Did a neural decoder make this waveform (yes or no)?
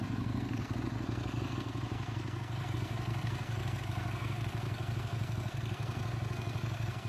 yes